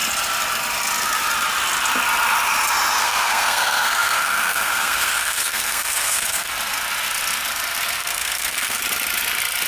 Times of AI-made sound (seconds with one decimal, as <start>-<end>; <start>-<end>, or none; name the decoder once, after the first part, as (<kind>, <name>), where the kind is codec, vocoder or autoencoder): 3.0-6.5 (codec, SNAC); 8.0-8.8